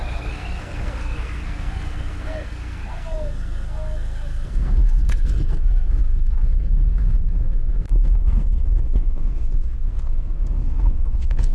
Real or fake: fake